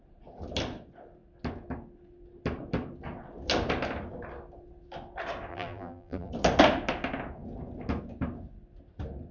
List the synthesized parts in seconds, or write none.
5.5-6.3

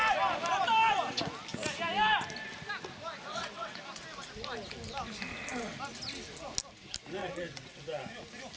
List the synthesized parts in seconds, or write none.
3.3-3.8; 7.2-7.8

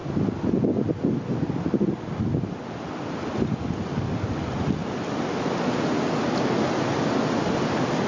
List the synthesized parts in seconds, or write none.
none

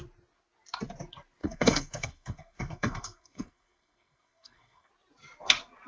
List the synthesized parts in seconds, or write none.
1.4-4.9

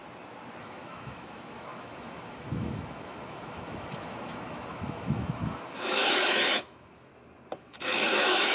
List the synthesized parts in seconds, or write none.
0.6-7.1; 7.6-8.5